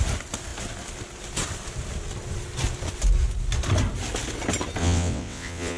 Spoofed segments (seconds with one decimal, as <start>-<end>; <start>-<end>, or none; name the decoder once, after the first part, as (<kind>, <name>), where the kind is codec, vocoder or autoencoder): 4.8-5.8 (vocoder, WaveNeXt)